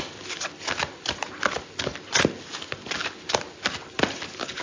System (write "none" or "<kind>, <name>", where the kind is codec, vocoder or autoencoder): none